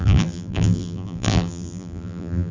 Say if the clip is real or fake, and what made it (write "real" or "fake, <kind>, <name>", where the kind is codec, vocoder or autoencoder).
fake, vocoder, BigVGAN v2